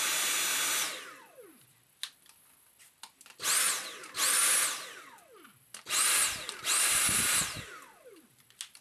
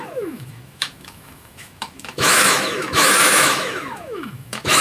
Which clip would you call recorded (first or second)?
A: first